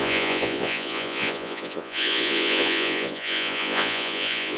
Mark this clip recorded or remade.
remade